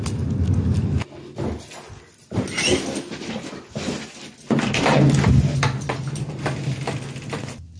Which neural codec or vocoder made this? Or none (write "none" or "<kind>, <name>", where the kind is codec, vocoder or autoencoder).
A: none